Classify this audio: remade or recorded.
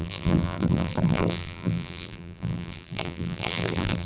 remade